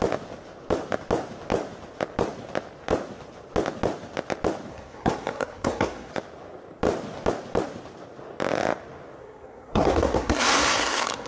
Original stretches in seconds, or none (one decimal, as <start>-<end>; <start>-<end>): 0.0-4.7; 6.1-9.2